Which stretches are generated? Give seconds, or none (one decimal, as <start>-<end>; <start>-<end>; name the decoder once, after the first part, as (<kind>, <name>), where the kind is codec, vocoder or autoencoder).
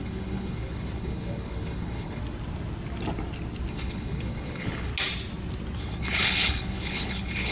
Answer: 0.0-2.2 (codec, HILCodec); 3.7-4.9; 5.8-7.5